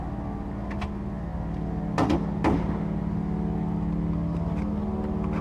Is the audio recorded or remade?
recorded